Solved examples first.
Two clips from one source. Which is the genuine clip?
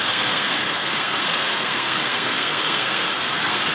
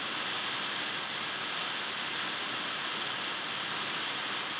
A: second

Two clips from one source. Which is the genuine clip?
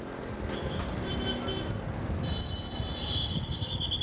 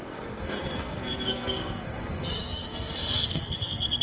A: first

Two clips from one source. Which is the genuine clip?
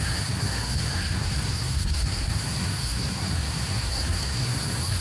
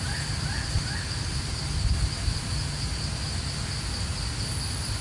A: second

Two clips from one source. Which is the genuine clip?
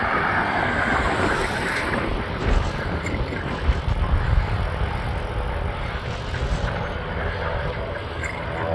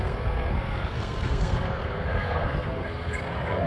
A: first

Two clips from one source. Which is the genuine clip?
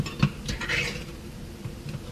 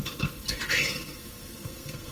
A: first